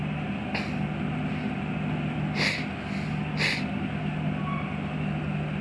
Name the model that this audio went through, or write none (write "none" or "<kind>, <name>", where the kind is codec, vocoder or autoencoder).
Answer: none